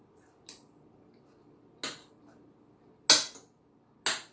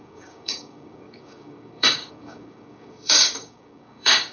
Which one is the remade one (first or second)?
second